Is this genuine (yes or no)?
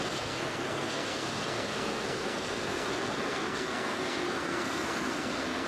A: no